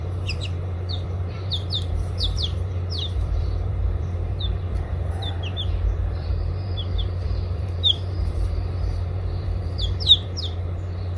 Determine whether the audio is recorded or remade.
remade